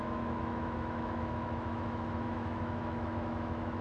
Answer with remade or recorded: remade